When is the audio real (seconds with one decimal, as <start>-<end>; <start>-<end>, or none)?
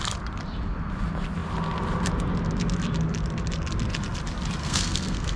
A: 0.0-4.6